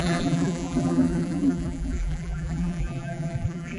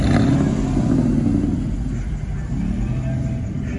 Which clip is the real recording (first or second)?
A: second